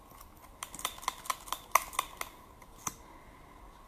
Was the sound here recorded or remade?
recorded